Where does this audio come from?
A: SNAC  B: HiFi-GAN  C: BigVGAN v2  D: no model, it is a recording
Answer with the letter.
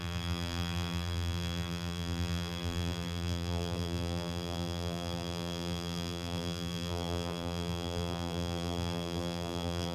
C